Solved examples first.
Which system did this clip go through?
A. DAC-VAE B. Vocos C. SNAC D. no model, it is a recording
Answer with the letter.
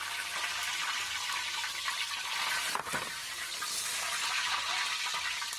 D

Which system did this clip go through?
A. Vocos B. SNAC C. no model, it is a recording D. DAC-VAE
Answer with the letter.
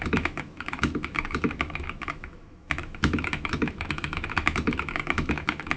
D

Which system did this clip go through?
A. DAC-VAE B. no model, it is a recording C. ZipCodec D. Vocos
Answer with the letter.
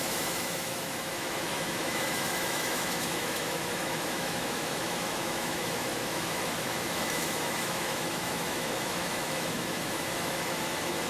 A